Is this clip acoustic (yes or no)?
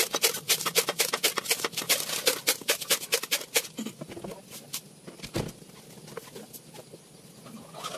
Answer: yes